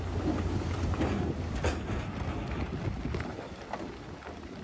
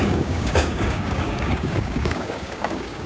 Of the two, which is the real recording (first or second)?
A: first